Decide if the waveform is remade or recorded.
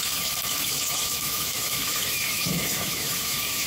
remade